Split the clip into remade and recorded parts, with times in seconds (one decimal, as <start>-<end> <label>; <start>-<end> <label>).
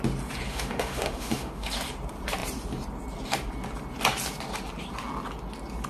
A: 0.0-0.5 recorded; 0.5-1.7 remade; 1.7-5.9 recorded